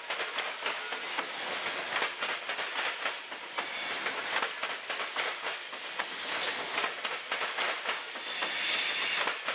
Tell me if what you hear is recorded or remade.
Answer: recorded